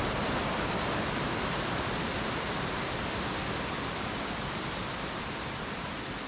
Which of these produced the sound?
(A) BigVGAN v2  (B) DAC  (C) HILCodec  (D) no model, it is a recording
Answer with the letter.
D